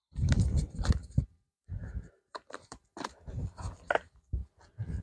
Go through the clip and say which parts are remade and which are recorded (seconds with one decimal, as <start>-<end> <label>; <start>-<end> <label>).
0.0-4.4 remade; 4.4-5.0 recorded